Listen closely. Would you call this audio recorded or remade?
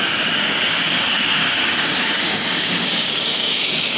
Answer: remade